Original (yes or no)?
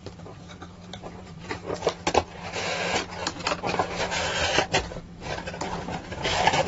no